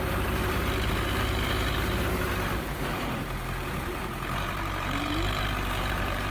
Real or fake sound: fake